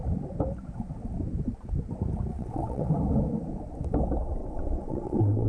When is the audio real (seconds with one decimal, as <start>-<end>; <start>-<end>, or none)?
0.0-2.3; 2.9-4.4